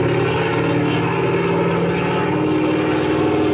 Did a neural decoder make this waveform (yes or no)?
no